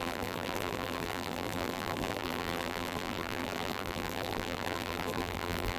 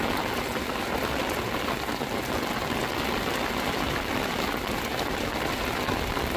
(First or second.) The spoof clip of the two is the first